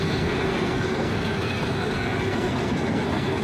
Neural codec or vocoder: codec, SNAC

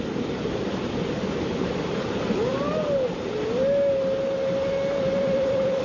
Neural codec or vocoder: none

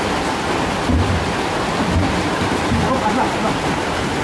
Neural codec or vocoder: none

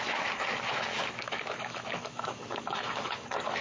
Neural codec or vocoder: autoencoder, DAC-VAE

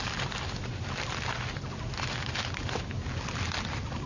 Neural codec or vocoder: none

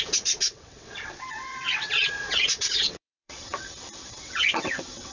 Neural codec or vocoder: vocoder, WaveNeXt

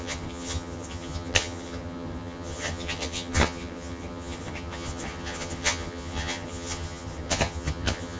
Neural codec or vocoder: vocoder, HiFi-GAN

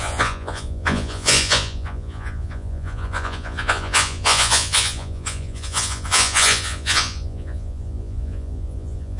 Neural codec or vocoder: vocoder, Vocos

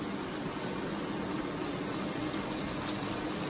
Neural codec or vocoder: none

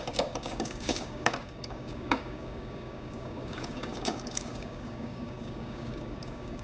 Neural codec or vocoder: codec, DAC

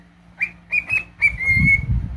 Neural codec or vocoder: vocoder, BigVGAN v2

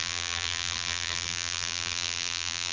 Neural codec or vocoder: vocoder, BigVGAN v2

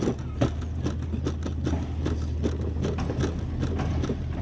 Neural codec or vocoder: none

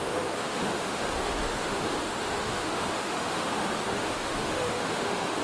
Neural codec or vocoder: autoencoder, DAC-VAE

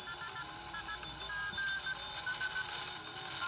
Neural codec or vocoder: none